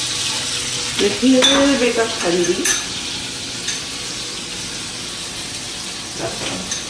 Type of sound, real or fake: real